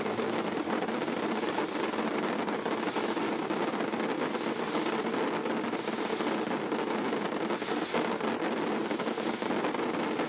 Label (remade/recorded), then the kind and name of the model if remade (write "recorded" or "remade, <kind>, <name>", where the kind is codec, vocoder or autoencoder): recorded